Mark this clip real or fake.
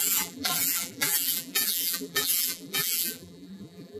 fake